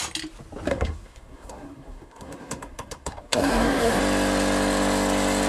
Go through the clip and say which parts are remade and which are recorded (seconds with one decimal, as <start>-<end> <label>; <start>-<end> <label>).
0.0-0.7 recorded; 0.7-4.0 remade; 4.0-5.5 recorded